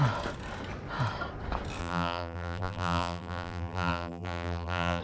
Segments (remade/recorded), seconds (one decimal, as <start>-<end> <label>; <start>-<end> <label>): 0.0-1.8 recorded; 1.8-5.0 remade